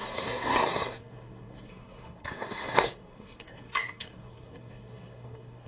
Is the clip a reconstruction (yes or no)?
yes